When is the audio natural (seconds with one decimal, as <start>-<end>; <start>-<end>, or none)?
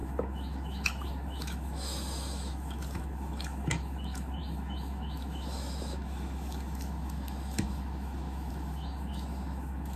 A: none